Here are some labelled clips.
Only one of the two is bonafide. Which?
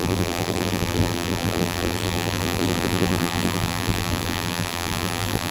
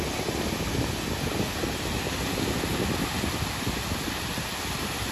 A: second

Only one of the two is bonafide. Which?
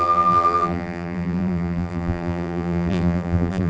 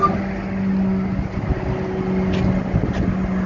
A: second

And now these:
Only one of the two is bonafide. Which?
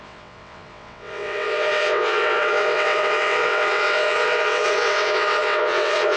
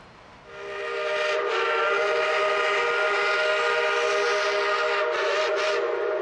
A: second